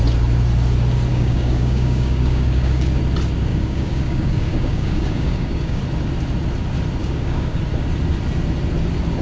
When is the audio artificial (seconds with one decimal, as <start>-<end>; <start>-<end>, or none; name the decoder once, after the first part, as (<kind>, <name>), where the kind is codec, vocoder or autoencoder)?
1.1-3.0 (codec, DAC); 3.5-5.8; 7.0-7.6